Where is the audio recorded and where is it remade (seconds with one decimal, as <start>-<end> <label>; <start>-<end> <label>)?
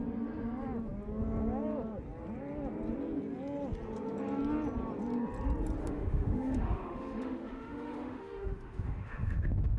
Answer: 0.0-5.8 recorded; 5.8-9.8 remade